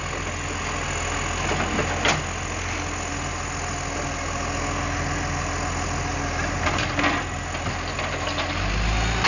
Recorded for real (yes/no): yes